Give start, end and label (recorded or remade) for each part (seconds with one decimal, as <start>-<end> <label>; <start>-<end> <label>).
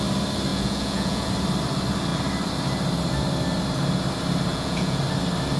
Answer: 0.0-0.5 recorded; 0.5-1.3 remade; 1.3-4.5 recorded; 4.5-5.0 remade; 5.0-5.6 recorded